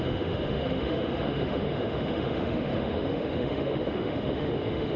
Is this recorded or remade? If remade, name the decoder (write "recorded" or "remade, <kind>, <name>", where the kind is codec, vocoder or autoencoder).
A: remade, autoencoder, DAC-VAE